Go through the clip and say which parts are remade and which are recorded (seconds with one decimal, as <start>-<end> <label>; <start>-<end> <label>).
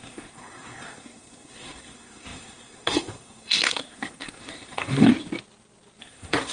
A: 0.0-5.1 remade; 5.1-6.0 recorded; 6.0-6.5 remade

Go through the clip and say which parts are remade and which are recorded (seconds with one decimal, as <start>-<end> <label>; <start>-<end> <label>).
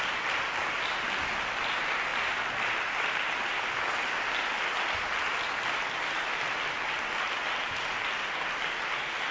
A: 0.0-9.3 recorded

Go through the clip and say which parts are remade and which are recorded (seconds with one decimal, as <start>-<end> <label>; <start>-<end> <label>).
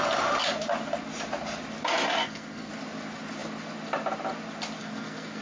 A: 0.0-2.2 recorded; 2.2-2.7 remade; 2.7-4.8 recorded; 4.8-5.4 remade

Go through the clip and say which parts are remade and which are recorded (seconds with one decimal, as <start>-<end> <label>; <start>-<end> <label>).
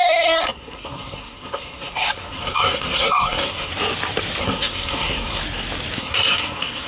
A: 0.0-3.7 remade; 3.7-4.4 recorded; 4.4-5.4 remade; 5.4-6.0 recorded; 6.0-6.9 remade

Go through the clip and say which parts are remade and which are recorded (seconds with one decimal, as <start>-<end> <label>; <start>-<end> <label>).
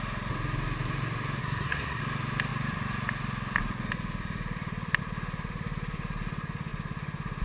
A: 0.0-1.4 recorded; 1.4-2.0 remade; 2.0-7.4 recorded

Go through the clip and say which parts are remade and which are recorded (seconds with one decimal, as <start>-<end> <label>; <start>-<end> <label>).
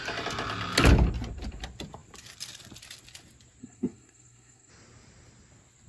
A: 0.0-3.6 recorded; 3.6-4.7 remade; 4.7-5.9 recorded